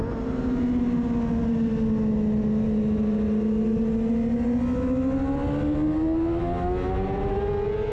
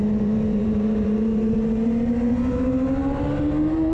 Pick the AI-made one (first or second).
second